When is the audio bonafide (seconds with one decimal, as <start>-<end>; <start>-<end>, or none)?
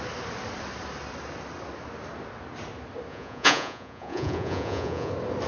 0.0-3.1; 5.1-5.5